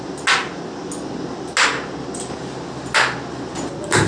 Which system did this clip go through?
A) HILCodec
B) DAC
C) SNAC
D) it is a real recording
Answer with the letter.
D